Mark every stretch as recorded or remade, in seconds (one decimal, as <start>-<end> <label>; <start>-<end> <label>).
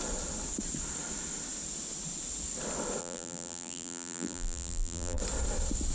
0.0-3.0 recorded; 3.0-5.2 remade; 5.2-5.9 recorded